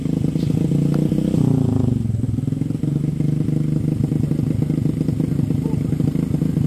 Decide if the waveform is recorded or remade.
recorded